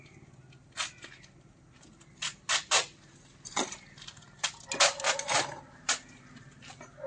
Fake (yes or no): no